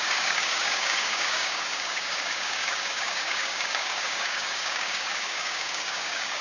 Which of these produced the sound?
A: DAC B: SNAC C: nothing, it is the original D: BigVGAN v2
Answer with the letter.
A